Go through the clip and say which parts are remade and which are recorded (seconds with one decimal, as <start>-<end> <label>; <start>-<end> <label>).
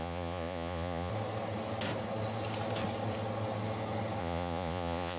0.0-1.1 remade; 1.1-4.2 recorded; 4.2-5.2 remade